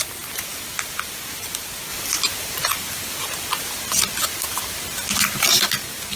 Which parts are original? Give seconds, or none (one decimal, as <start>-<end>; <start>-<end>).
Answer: 0.0-6.2